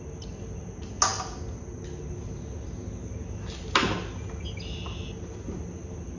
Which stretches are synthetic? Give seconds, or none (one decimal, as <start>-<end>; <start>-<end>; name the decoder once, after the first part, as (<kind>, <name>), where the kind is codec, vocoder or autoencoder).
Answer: none